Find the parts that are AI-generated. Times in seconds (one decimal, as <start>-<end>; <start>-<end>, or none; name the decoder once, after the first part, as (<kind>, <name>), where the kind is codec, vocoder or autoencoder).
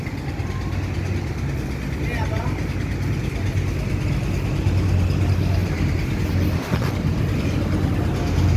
5.6-6.2 (vocoder, BigVGAN v2)